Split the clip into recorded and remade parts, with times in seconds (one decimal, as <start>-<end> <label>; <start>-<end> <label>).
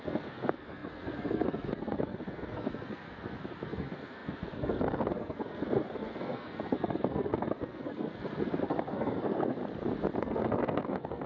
0.0-9.6 remade; 9.6-10.2 recorded; 10.2-11.3 remade